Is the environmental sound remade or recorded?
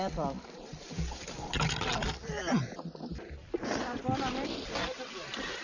recorded